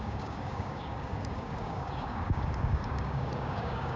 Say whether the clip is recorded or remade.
remade